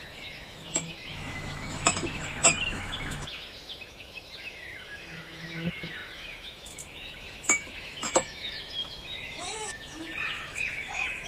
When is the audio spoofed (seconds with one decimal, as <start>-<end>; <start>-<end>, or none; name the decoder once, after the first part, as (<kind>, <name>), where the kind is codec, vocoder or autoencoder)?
0.0-11.3 (autoencoder, DAC-VAE)